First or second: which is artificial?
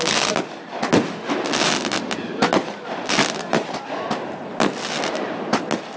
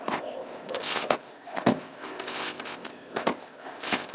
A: second